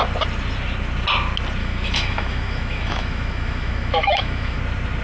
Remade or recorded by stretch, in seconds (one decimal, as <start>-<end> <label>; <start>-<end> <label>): 0.0-1.6 recorded; 1.6-4.6 remade; 4.6-5.0 recorded